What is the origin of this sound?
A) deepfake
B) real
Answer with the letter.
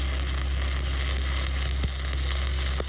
B